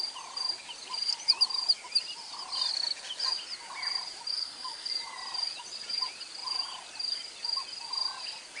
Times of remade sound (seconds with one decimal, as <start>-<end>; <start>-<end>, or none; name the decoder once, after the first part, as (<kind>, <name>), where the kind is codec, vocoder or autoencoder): 4.3-4.9 (codec, SNAC)